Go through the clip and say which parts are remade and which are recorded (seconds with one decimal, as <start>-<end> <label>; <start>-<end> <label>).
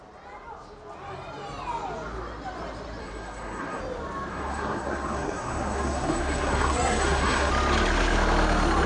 0.0-3.0 recorded; 3.0-3.8 remade; 3.8-4.3 recorded; 4.3-7.5 remade; 7.5-8.9 recorded